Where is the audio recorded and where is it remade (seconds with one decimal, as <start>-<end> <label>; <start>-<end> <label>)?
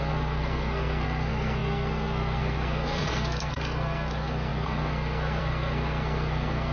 0.0-6.7 remade